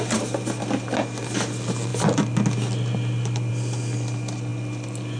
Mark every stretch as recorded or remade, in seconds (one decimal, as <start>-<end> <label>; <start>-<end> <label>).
0.0-5.2 recorded